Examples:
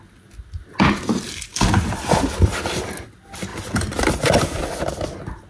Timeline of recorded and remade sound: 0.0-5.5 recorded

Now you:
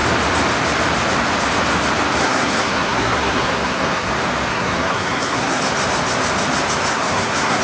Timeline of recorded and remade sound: 0.0-2.2 recorded; 2.2-4.1 remade; 4.1-4.5 recorded; 4.5-5.6 remade; 5.6-6.9 recorded; 6.9-7.6 remade

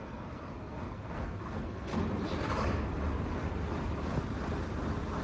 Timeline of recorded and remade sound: 0.0-1.9 remade; 1.9-5.2 recorded

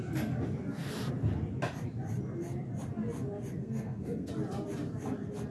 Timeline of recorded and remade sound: 0.0-3.6 recorded; 3.6-4.3 remade; 4.3-5.5 recorded

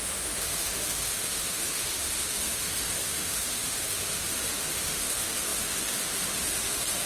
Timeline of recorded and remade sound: 0.0-7.1 remade

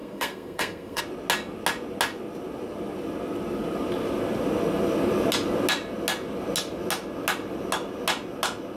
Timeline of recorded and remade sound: 0.0-1.0 remade; 1.0-8.8 recorded